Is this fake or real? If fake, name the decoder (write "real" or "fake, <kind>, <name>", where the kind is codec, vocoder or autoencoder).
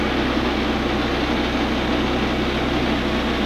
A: real